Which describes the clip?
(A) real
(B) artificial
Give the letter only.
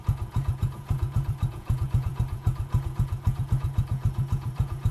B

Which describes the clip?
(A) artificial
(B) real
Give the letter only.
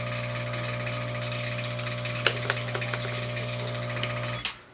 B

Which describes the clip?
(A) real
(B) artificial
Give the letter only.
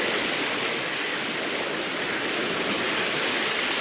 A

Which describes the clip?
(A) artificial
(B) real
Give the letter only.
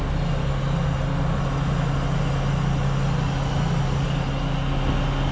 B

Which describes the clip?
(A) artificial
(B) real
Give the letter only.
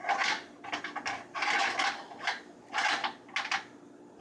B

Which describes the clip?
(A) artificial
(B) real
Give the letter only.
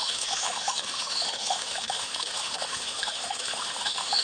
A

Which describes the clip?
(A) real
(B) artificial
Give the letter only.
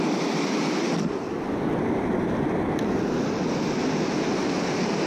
A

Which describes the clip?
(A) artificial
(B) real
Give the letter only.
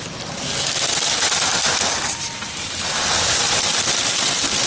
B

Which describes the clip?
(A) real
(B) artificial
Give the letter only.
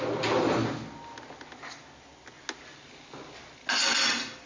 A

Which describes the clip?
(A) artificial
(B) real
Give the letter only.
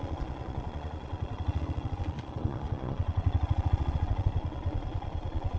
A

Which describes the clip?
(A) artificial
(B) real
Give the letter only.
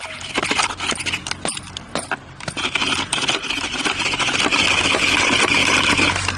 B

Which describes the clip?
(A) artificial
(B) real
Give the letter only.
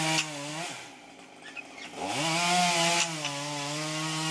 B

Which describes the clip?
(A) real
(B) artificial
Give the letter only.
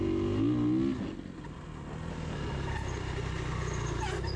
A